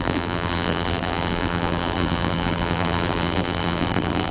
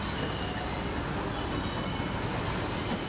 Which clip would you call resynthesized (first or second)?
first